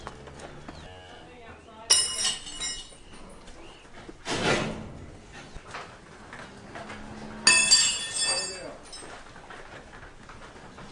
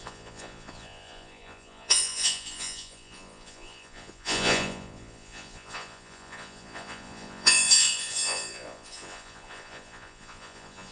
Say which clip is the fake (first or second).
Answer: second